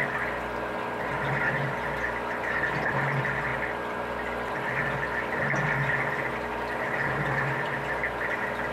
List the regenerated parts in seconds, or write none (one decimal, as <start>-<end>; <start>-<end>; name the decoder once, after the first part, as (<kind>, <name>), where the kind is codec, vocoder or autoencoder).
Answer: 1.0-3.5 (vocoder, BigVGAN v2); 6.5-8.7